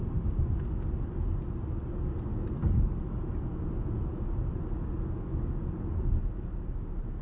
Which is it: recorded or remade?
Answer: recorded